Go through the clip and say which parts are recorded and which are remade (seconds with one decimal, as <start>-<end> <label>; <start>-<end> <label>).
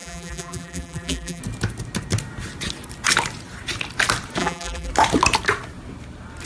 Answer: 0.0-1.4 remade; 1.4-4.4 recorded; 4.4-4.9 remade; 4.9-6.5 recorded